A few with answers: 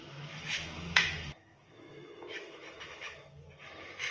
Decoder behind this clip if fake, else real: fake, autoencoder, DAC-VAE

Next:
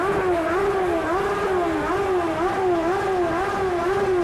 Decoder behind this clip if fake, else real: real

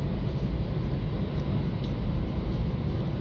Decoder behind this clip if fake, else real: real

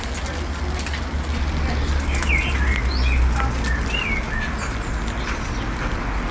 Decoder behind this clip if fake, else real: real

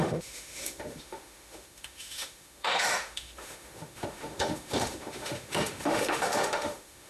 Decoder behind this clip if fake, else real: fake, autoencoder, DAC-VAE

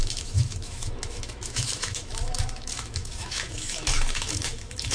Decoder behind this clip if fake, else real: fake, autoencoder, DAC-VAE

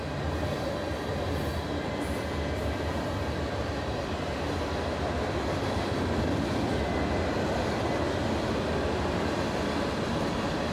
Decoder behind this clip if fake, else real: real